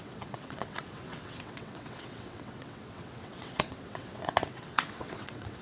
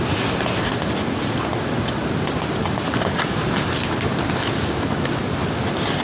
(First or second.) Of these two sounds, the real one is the second